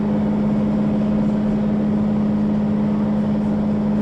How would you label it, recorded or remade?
recorded